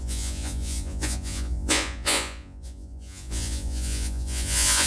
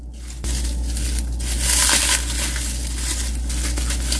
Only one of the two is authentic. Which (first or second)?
second